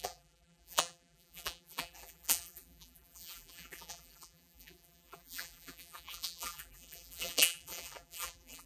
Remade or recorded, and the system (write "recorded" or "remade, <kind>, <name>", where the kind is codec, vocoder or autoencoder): remade, vocoder, BigVGAN v2